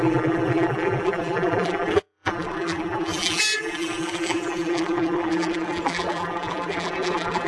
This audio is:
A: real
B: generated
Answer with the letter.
B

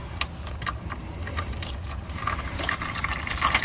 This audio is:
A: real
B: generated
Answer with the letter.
A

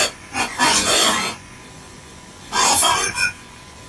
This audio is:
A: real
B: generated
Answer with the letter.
B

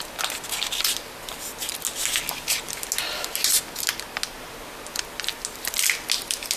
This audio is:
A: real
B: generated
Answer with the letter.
A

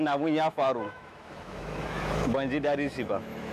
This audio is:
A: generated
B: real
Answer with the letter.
A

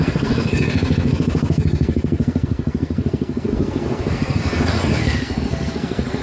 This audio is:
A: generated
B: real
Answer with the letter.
A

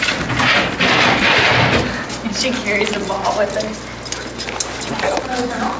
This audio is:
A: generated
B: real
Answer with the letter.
B